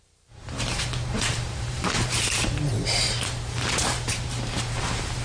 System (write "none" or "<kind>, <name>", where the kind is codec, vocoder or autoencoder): vocoder, BigVGAN v2